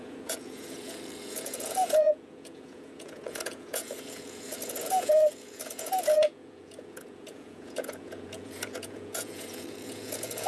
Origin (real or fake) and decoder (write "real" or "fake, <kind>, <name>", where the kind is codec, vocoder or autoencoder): fake, vocoder, Vocos